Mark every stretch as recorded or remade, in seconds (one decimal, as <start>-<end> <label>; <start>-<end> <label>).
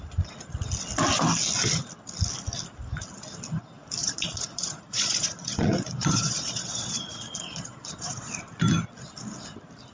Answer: 0.0-4.0 recorded; 4.0-8.3 remade; 8.3-9.9 recorded